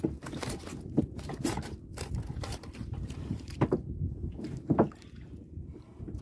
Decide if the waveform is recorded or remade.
remade